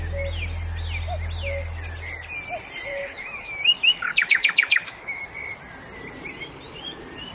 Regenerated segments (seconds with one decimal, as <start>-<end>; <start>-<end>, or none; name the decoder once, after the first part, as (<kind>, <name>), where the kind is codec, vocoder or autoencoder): 2.9-5.2 (autoencoder, DAC-VAE)